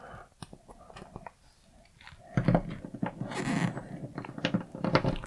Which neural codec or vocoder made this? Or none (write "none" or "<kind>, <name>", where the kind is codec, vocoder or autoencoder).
none